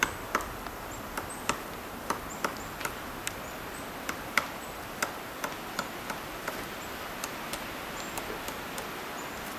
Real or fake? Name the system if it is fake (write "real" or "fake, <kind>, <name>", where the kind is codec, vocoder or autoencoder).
real